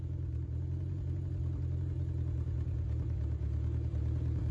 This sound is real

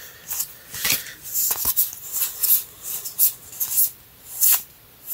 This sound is real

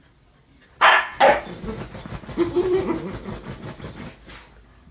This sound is real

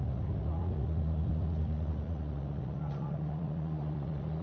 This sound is fake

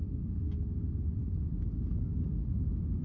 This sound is real